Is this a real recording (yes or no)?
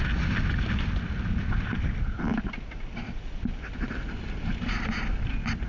yes